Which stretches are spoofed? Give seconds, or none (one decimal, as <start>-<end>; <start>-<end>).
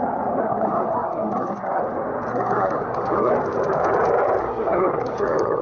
0.4-1.8; 2.3-3.3; 4.4-5.6